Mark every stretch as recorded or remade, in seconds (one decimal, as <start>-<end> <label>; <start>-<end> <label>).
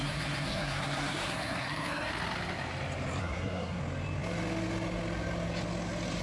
0.0-2.1 remade; 2.1-3.2 recorded; 3.2-3.8 remade; 3.8-6.2 recorded